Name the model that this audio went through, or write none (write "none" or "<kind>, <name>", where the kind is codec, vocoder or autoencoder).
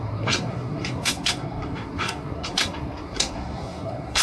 codec, SNAC